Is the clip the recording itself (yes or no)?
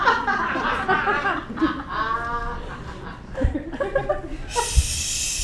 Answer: yes